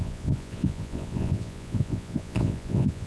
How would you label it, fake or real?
fake